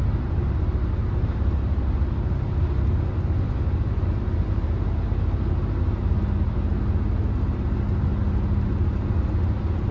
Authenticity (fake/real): real